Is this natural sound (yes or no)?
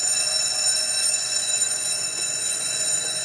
no